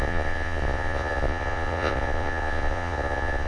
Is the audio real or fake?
fake